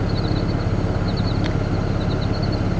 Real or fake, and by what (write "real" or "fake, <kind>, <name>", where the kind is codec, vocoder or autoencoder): real